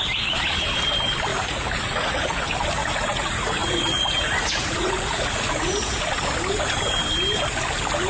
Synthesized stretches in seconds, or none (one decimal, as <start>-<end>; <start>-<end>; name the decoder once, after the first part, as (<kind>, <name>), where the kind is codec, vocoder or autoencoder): 1.3-2.4 (vocoder, Vocos); 2.8-6.1